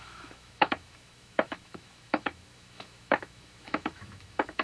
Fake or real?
fake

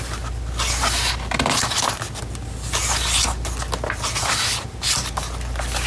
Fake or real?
real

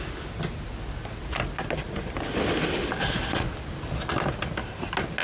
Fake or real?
real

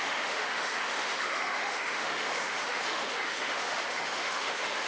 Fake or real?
fake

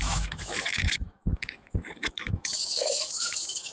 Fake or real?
fake